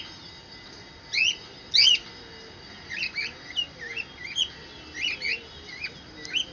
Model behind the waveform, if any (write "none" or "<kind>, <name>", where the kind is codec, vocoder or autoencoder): none